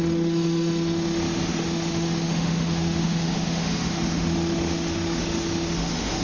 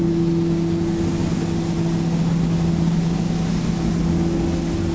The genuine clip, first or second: second